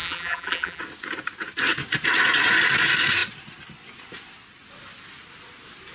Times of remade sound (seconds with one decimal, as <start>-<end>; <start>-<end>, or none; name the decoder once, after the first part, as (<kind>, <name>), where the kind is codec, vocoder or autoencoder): 0.0-0.8 (vocoder, BigVGAN v2)